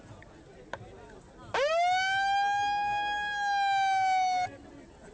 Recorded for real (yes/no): yes